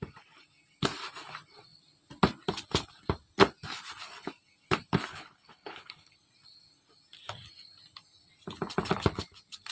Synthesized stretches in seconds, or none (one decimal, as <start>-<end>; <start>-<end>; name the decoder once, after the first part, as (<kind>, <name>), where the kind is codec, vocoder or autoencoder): 5.1-6.1 (codec, HILCodec)